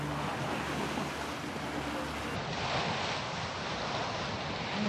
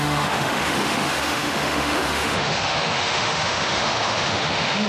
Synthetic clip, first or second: second